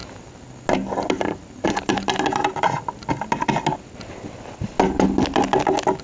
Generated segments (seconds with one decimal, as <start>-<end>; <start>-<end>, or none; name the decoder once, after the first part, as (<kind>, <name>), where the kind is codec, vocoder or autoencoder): none